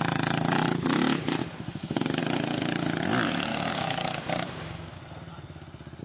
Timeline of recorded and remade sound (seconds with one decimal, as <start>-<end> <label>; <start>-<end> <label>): 0.0-1.4 recorded; 1.4-2.2 remade; 2.2-3.5 recorded; 3.5-5.0 remade; 5.0-6.0 recorded